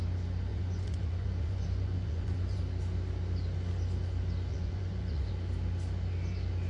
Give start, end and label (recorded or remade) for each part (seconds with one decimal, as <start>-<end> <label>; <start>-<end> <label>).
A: 0.0-0.5 recorded; 0.5-2.6 remade; 2.6-4.5 recorded; 4.5-5.3 remade; 5.3-6.7 recorded